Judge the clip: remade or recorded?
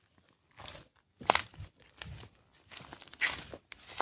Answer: recorded